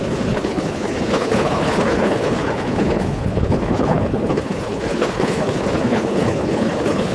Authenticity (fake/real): fake